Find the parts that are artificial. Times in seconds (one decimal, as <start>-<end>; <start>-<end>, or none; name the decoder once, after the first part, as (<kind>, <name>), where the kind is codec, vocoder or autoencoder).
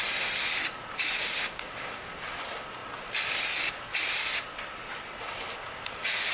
1.2-2.1 (codec, DAC)